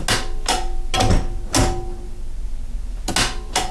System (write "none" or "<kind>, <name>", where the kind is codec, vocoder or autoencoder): none